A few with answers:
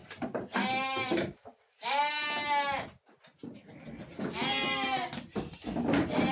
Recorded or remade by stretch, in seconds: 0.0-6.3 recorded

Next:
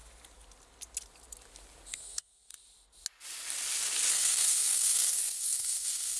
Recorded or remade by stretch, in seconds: 0.0-1.9 recorded; 1.9-2.5 remade; 2.5-4.1 recorded; 4.1-6.2 remade

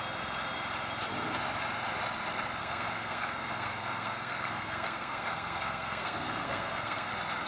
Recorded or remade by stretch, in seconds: 0.0-2.6 recorded; 2.6-7.1 remade; 7.1-7.5 recorded

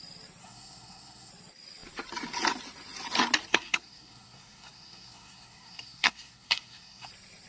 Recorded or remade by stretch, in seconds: 0.0-0.4 recorded; 0.4-1.3 remade; 1.3-3.5 recorded; 3.5-7.1 remade; 7.1-7.5 recorded

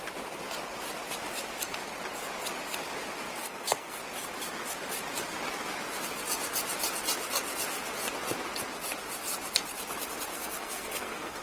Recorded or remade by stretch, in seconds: 0.0-3.4 recorded; 3.4-4.0 remade; 4.0-10.3 recorded; 10.3-11.4 remade

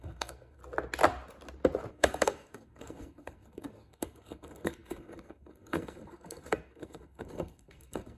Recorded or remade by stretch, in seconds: 0.0-0.6 remade; 0.6-1.9 recorded; 1.9-8.2 remade